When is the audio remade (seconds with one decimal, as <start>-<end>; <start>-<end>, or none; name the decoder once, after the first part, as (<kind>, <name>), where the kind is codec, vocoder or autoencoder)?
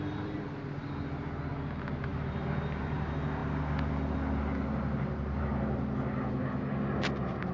none